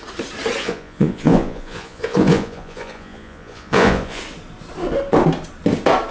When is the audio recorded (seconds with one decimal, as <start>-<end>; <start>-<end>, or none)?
0.0-0.6; 4.2-6.1

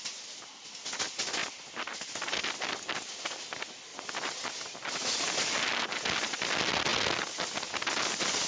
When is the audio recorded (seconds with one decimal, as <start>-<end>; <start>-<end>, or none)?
0.0-8.5

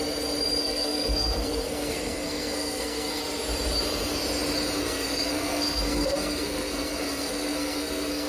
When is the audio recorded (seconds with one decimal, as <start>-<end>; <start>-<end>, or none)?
0.0-0.6; 3.2-4.8

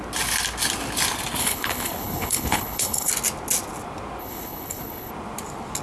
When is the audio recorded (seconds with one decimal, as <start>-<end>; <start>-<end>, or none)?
0.0-1.4; 3.1-4.2; 5.1-5.8

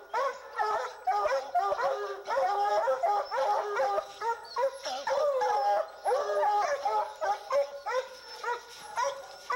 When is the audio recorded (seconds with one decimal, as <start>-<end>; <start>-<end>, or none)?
4.5-9.1